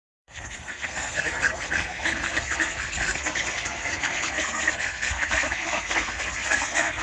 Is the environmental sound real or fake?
fake